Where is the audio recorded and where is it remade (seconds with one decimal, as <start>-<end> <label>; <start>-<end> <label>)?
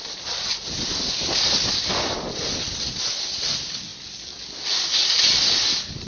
0.0-6.1 recorded